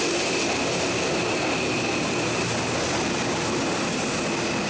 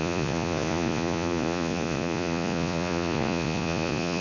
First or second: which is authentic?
first